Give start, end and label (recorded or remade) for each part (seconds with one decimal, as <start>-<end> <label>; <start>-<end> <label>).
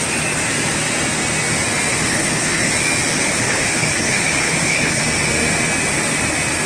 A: 0.0-1.9 recorded; 1.9-2.7 remade; 2.7-3.2 recorded; 3.2-5.0 remade; 5.0-6.7 recorded